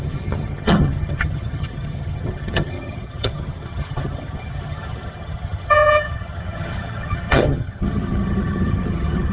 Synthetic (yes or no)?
yes